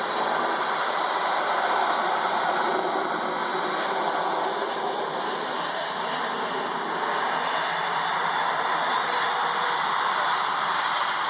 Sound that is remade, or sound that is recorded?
recorded